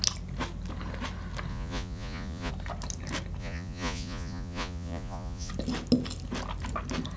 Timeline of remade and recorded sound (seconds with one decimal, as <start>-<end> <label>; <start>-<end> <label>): 0.0-1.5 recorded; 1.5-2.5 remade; 2.5-3.4 recorded; 3.4-5.5 remade; 5.5-7.2 recorded